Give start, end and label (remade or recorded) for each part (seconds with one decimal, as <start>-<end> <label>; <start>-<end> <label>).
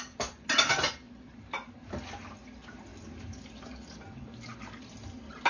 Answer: 0.0-5.5 recorded